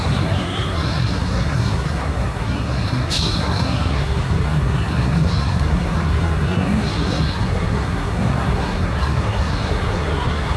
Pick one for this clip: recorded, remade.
remade